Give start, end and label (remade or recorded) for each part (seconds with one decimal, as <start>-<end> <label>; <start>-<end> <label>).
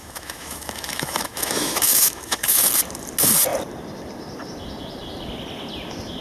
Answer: 0.0-2.7 remade; 2.7-6.2 recorded